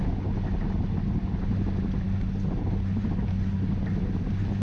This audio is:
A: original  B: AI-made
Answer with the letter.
A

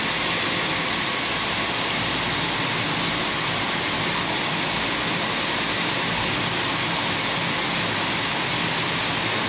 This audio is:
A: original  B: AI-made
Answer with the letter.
A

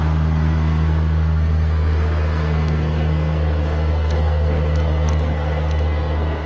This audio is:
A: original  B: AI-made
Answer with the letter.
B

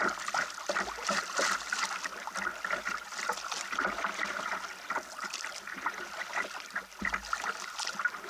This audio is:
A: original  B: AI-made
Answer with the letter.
A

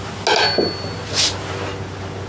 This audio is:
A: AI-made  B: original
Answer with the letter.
B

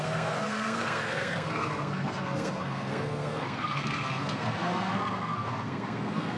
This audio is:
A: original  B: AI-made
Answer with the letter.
B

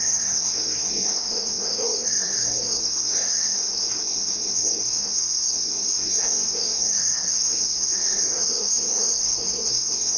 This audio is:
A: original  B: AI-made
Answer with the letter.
B